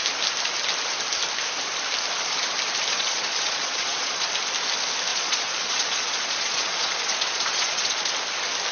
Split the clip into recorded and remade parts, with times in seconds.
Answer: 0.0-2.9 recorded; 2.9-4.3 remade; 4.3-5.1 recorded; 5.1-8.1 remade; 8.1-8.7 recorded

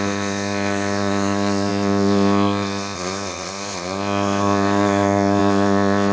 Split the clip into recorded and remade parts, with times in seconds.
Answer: 0.0-6.1 remade

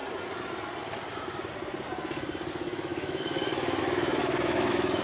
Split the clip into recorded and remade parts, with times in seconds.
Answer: 0.0-2.5 recorded; 2.5-5.0 remade

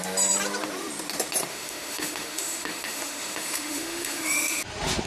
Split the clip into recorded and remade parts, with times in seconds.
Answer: 0.0-1.5 recorded; 1.5-4.6 remade; 4.6-5.1 recorded